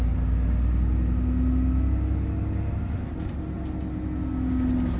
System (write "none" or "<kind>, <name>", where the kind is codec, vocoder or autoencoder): none